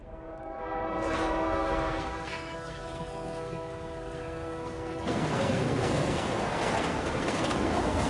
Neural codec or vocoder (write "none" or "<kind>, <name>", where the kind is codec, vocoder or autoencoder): codec, SNAC